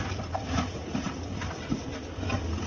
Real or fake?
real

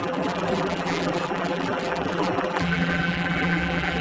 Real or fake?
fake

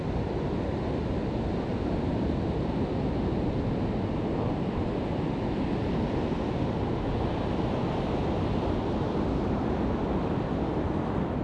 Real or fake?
real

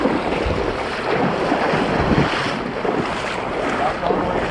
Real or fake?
fake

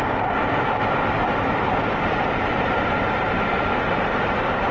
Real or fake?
fake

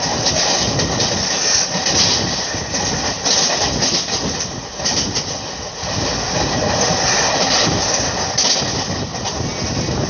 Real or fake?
real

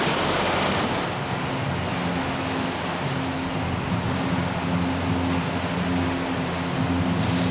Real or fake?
real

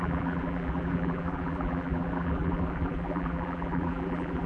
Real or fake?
fake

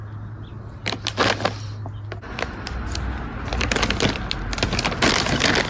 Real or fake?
real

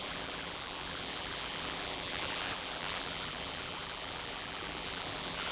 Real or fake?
fake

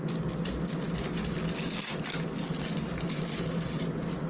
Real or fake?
real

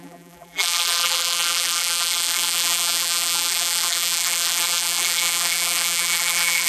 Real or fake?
fake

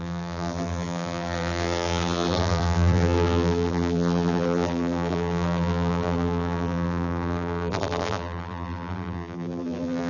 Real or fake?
fake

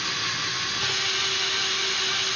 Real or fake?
real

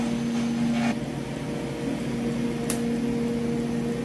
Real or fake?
real